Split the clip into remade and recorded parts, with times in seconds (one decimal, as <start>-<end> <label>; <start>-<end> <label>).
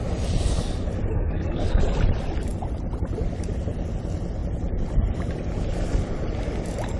0.0-1.1 recorded; 1.1-1.8 remade; 1.8-7.0 recorded